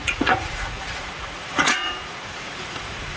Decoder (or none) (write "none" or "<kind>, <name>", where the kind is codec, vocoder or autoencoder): vocoder, Vocos